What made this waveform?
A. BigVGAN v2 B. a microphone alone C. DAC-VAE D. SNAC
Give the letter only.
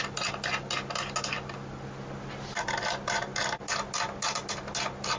B